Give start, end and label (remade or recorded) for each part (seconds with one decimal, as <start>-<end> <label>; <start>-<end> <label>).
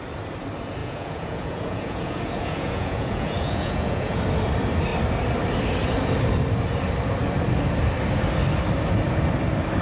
0.0-0.8 recorded; 0.8-4.2 remade; 4.2-9.8 recorded